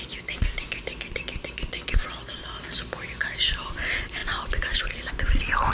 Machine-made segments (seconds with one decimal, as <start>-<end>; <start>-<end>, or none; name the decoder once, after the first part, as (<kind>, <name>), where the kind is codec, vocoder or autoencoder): 2.6-3.2 (vocoder, BigVGAN v2); 4.2-5.1